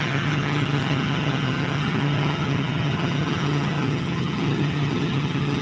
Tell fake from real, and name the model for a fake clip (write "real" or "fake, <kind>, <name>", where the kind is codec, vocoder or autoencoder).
fake, vocoder, HiFi-GAN